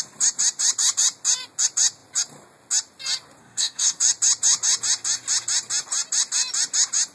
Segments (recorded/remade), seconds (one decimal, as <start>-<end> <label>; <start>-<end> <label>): 0.0-3.4 recorded; 3.4-4.0 remade; 4.0-7.1 recorded